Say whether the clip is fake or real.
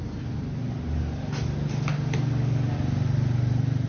real